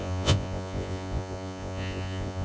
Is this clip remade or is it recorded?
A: remade